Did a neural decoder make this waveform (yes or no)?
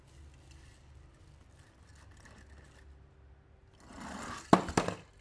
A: no